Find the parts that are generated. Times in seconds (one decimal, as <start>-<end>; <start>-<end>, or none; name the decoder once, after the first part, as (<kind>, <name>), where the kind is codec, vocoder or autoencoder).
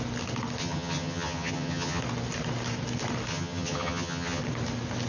0.6-2.0 (vocoder, HiFi-GAN); 3.3-4.4